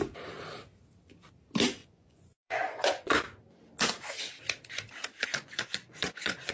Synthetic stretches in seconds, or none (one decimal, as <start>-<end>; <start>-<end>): 1.8-3.2; 5.3-6.5